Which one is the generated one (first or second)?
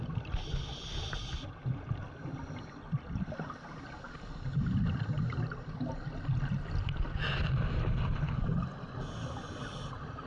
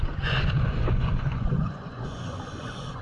second